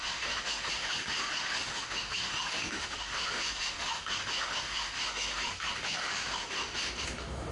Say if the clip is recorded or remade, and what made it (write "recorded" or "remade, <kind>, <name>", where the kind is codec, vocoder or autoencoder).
remade, autoencoder, DAC-VAE